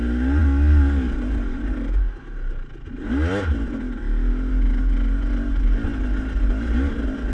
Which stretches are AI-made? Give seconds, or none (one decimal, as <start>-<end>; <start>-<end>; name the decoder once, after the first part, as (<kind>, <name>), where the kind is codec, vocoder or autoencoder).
none